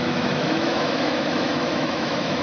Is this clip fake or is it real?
fake